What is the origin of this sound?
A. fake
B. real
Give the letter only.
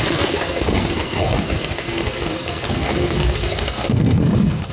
A